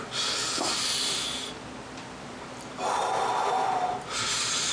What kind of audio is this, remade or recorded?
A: recorded